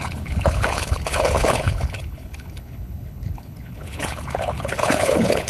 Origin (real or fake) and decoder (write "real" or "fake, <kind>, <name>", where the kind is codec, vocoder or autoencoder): fake, codec, HILCodec